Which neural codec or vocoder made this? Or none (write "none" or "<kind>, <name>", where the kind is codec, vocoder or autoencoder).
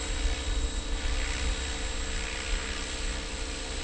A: none